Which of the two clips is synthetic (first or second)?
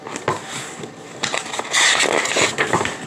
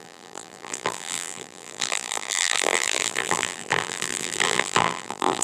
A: second